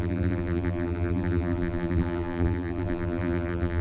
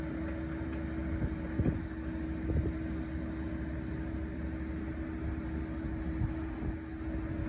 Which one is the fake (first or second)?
first